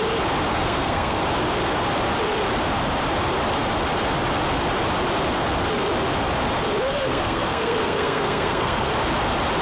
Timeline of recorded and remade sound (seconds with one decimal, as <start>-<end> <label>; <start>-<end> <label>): 0.0-0.5 recorded; 0.5-1.2 remade; 1.2-7.0 recorded; 7.0-8.9 remade; 8.9-9.6 recorded